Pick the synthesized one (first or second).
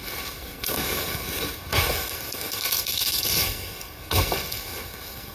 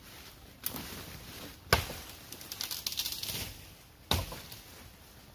first